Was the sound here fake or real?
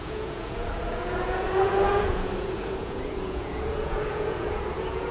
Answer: fake